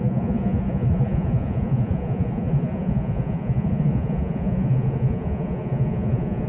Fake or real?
fake